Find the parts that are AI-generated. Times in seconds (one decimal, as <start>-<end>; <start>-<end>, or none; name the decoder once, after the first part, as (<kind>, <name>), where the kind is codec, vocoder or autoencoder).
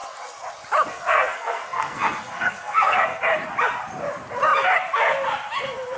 0.9-3.2 (codec, SNAC)